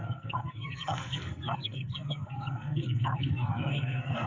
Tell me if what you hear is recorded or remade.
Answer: remade